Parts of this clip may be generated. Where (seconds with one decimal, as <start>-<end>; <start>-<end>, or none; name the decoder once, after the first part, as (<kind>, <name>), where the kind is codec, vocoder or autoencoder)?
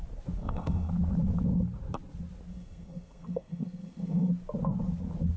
0.4-0.9 (codec, SNAC); 2.5-4.3